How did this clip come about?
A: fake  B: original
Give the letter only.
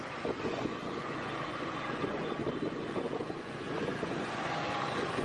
A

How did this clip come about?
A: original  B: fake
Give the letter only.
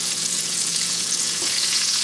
B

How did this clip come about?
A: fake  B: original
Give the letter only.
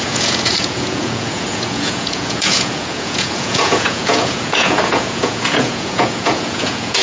A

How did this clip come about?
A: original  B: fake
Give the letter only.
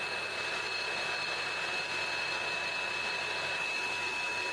A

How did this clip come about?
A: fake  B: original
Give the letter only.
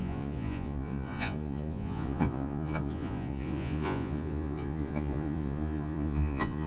A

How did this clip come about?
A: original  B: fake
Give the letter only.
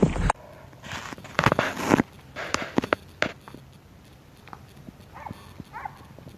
A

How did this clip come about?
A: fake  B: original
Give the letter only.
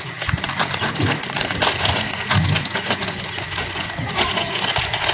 A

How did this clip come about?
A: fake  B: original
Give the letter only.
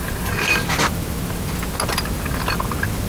B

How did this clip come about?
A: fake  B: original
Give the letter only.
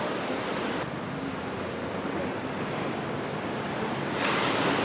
B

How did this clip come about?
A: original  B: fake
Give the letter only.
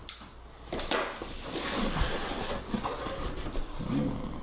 A